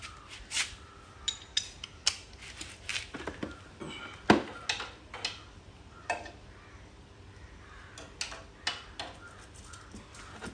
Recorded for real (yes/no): yes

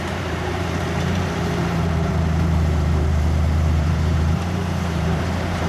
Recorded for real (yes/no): no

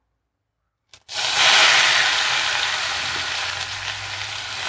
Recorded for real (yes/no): yes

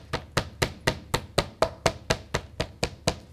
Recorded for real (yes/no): yes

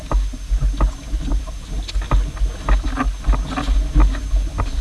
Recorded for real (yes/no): yes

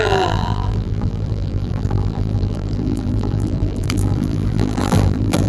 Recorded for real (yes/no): no